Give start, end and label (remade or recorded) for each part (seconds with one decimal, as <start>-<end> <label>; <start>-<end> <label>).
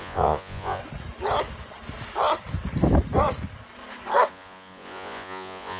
0.0-0.8 remade; 0.8-4.3 recorded; 4.3-5.8 remade